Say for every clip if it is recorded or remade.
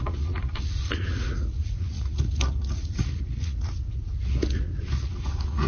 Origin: remade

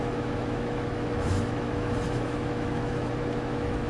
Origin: remade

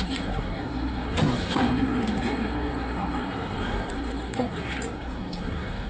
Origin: remade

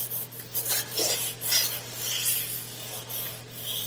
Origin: recorded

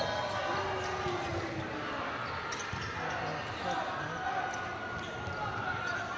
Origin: recorded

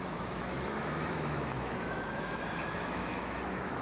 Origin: remade